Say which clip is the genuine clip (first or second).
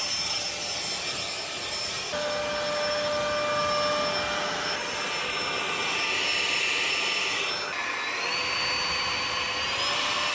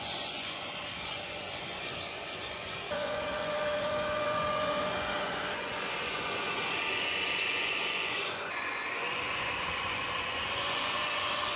first